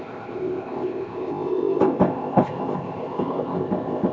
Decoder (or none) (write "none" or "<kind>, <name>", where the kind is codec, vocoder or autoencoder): codec, ZipCodec